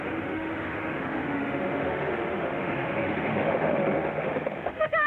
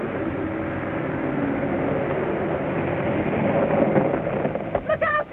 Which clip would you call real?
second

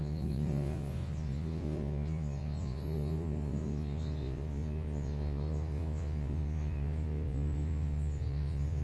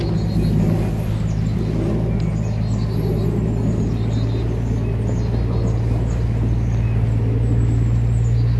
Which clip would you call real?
second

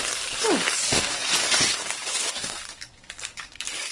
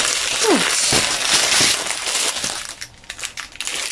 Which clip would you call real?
second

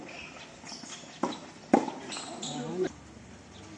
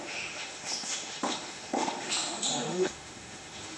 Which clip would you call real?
first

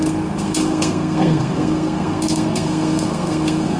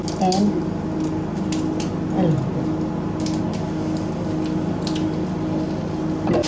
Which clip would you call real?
second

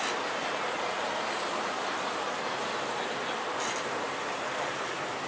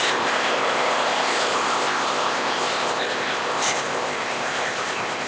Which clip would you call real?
first